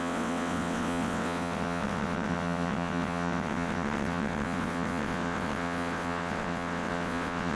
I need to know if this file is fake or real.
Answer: fake